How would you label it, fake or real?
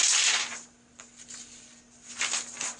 real